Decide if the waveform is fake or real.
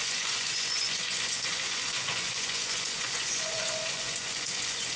fake